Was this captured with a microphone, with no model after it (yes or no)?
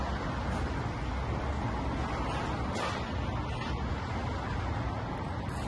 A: yes